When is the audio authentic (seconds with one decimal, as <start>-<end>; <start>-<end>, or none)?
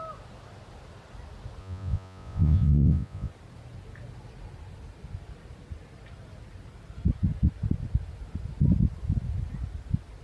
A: 0.0-1.6; 3.3-10.2